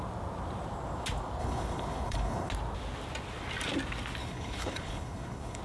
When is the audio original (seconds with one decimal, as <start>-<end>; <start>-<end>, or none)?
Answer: 0.0-1.4; 2.5-4.2